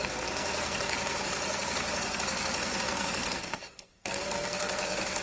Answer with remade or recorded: remade